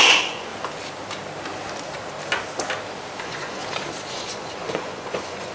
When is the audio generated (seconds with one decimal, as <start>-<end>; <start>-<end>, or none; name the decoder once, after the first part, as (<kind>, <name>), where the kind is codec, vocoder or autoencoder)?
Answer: 0.0-0.5 (vocoder, Vocos); 3.2-3.6; 4.1-5.5